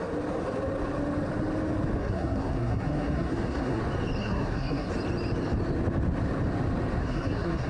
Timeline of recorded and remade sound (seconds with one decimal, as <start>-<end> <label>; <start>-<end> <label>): 0.0-2.0 recorded; 2.0-3.8 remade; 3.8-4.2 recorded; 4.2-4.9 remade; 4.9-7.0 recorded; 7.0-7.7 remade